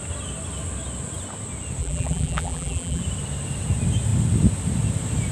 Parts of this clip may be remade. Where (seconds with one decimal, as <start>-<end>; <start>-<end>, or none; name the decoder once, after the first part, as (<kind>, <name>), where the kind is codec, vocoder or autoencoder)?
1.8-3.0 (vocoder, BigVGAN v2)